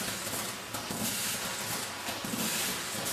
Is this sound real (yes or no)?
yes